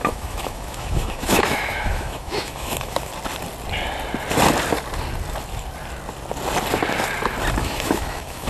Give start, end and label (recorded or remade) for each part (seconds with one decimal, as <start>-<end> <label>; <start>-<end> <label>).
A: 0.0-3.1 remade; 3.1-7.6 recorded; 7.6-8.5 remade